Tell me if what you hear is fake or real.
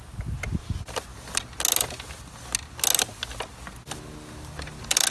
real